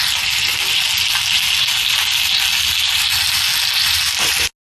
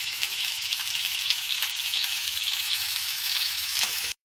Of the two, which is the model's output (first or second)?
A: second